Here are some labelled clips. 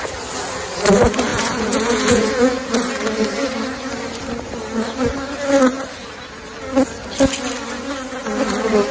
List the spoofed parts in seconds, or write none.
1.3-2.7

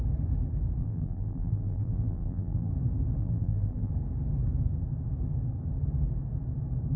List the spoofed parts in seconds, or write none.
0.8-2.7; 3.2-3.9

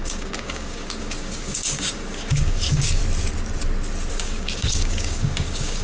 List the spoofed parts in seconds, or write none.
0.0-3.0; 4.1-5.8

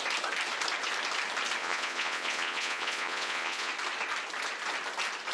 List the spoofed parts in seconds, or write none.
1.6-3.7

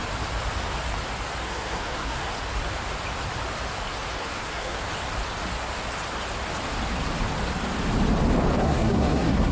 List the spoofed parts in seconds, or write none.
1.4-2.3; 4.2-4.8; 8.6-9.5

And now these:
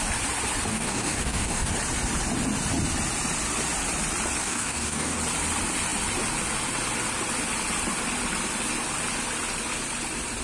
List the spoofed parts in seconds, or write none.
0.7-1.7; 4.4-5.2

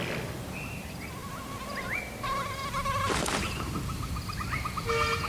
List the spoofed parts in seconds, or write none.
none

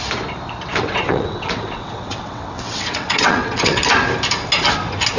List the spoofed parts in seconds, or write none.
0.7-3.8